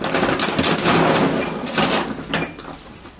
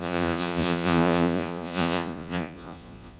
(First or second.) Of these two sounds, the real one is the first